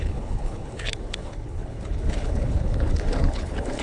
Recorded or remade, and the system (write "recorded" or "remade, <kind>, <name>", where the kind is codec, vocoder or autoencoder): remade, codec, HILCodec